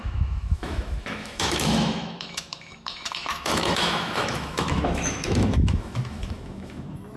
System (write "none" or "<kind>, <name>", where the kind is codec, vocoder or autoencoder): autoencoder, DAC-VAE